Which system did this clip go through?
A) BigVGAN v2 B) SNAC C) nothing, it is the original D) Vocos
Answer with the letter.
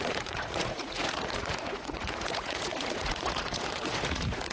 D